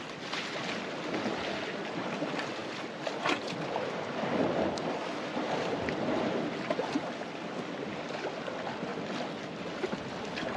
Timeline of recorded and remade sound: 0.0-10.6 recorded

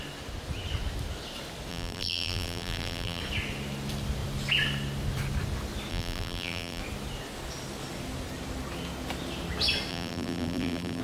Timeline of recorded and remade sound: 0.0-1.7 recorded; 1.7-3.2 remade; 3.2-5.9 recorded; 5.9-6.8 remade; 6.8-9.9 recorded; 9.9-11.0 remade

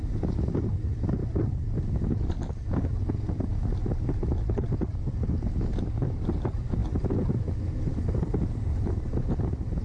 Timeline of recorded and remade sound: 0.0-6.8 recorded; 6.8-7.3 remade; 7.3-7.9 recorded; 7.9-8.6 remade; 8.6-9.8 recorded

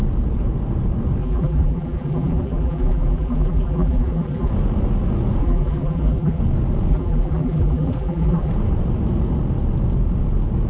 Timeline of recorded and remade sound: 0.0-1.2 recorded; 1.2-4.5 remade; 4.5-5.4 recorded; 5.4-6.4 remade; 6.4-6.9 recorded; 6.9-8.5 remade; 8.5-10.7 recorded